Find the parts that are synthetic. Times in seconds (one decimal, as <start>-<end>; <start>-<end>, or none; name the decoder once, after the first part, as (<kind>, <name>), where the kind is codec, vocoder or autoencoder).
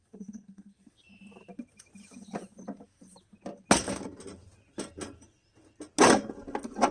0.0-0.9 (codec, SNAC)